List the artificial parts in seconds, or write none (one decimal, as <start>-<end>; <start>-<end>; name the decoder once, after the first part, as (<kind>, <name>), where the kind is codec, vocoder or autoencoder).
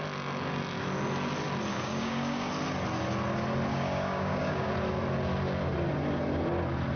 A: 1.7-2.5 (codec, DAC); 3.7-4.7